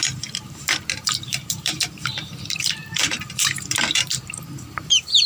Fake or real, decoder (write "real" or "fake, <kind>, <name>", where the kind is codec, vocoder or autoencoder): fake, vocoder, BigVGAN v2